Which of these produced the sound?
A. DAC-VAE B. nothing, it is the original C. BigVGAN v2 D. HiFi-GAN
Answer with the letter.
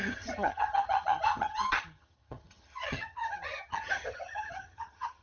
D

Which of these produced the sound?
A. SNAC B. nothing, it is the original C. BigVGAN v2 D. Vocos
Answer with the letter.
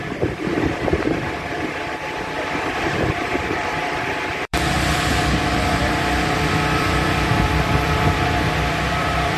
C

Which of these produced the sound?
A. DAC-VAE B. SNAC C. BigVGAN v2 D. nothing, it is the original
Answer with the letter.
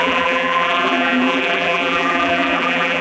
C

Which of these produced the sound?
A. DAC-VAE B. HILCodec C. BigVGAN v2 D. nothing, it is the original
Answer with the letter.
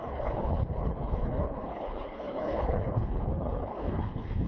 B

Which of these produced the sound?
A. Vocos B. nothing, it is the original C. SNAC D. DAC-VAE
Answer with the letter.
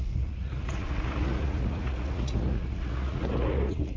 A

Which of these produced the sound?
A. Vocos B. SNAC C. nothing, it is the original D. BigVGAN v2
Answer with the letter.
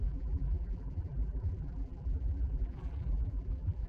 D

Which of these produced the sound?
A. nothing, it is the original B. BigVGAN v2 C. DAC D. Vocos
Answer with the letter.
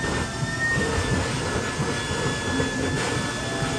A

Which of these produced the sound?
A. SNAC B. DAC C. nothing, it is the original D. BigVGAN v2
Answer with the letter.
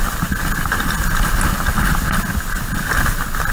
C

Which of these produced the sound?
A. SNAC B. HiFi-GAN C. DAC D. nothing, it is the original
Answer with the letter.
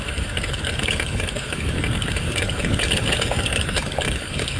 C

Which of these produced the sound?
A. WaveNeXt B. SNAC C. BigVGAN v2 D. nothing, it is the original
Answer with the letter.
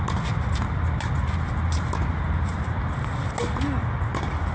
D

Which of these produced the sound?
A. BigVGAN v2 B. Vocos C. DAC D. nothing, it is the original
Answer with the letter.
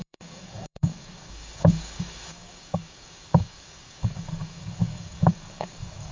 C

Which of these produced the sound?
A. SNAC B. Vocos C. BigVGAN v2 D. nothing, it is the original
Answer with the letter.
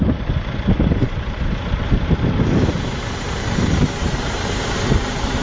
C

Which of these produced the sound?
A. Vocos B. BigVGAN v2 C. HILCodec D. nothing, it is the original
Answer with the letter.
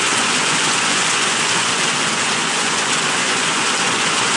A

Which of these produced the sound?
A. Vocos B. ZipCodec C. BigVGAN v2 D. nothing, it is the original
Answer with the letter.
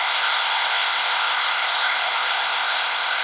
B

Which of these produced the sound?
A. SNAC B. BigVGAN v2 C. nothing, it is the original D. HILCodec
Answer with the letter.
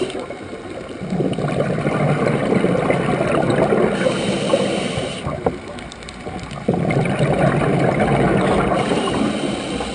C